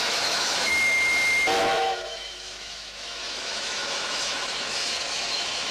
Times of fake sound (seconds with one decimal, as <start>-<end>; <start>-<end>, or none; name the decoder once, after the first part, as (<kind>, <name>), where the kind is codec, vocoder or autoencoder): 0.0-0.7 (autoencoder, DAC-VAE); 1.6-5.7